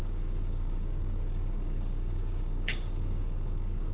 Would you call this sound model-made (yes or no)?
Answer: yes